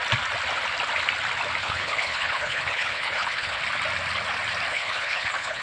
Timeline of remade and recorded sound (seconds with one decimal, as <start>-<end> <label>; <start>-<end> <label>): 0.0-1.6 recorded; 1.6-3.6 remade; 3.6-4.7 recorded; 4.7-5.6 remade